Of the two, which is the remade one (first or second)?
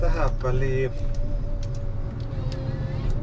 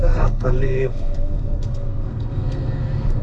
second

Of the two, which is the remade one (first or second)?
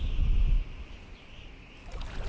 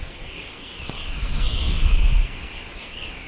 second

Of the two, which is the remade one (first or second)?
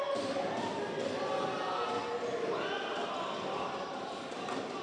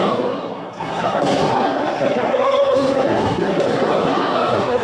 second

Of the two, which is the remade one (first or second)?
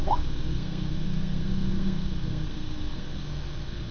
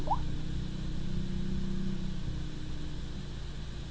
first